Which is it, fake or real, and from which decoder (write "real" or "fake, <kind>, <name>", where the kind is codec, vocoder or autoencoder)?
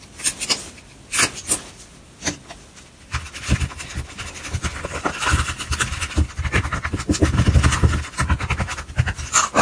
real